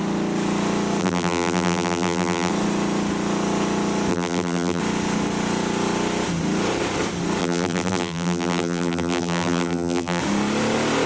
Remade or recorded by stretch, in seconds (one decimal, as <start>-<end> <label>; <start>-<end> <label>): 0.0-1.0 recorded; 1.0-2.5 remade; 2.5-4.1 recorded; 4.1-4.8 remade; 4.8-7.4 recorded; 7.4-10.2 remade; 10.2-11.1 recorded